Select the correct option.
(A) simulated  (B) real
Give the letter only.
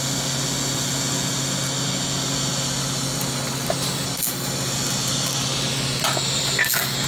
B